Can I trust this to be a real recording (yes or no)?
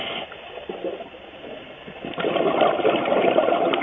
yes